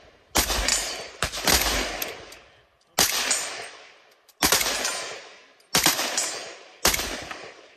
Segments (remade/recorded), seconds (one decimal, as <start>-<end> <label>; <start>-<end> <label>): 0.0-7.8 recorded